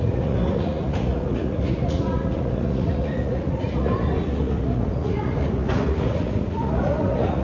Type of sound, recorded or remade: remade